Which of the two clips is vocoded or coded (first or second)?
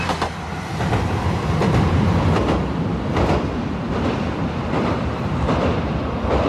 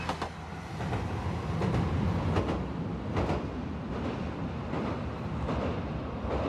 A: first